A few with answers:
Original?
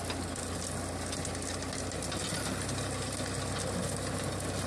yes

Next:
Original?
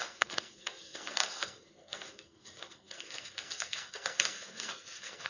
no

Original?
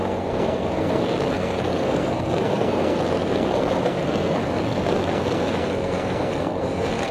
no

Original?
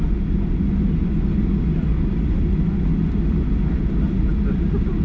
yes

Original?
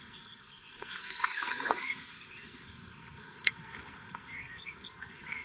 no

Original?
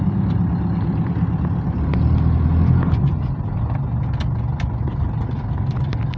yes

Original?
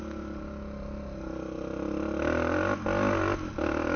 yes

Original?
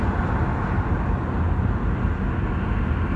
yes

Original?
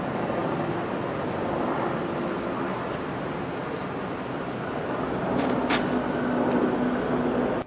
yes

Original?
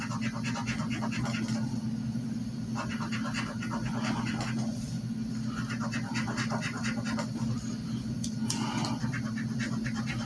yes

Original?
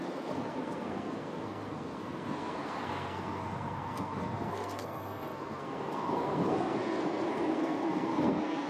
no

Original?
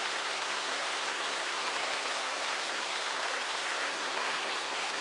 no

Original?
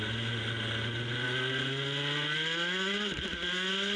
yes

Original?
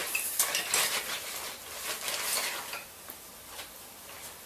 yes